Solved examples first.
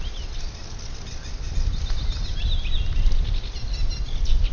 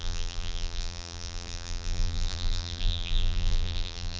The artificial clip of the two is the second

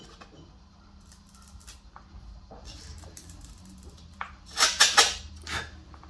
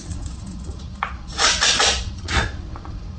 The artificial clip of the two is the second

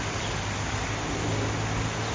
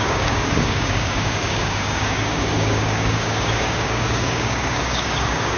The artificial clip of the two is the second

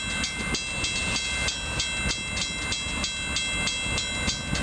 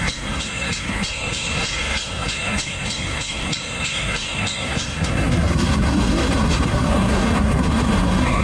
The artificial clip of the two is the second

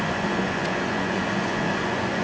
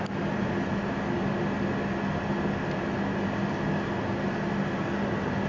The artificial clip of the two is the first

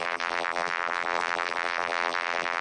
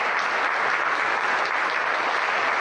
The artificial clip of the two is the first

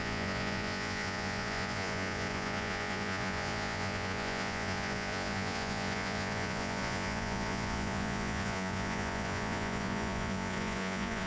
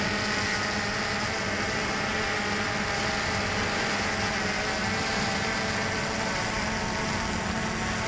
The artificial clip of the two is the first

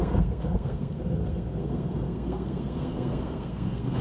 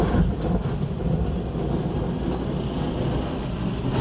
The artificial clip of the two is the first